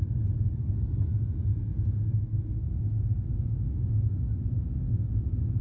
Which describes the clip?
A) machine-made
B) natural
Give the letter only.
B